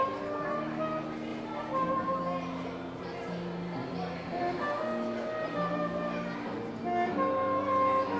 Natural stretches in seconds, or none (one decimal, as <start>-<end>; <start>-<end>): 0.0-3.8; 4.4-8.2